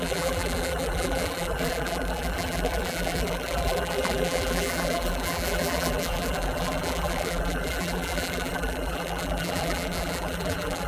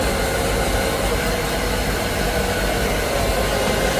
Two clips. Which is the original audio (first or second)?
second